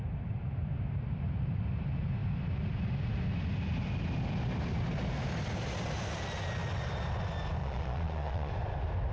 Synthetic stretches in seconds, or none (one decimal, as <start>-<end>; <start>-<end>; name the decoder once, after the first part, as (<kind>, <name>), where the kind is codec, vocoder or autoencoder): 7.6-8.5 (vocoder, Vocos)